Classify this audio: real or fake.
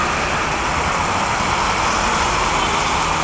real